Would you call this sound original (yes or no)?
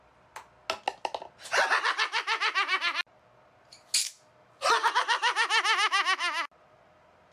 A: yes